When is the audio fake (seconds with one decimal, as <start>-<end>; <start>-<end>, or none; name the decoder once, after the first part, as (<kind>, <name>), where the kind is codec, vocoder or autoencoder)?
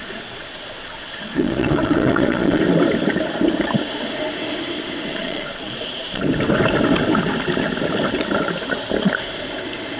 0.0-2.6 (vocoder, Vocos); 5.1-6.2